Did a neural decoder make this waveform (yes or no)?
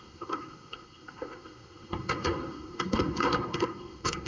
yes